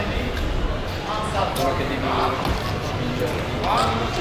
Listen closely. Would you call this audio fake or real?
real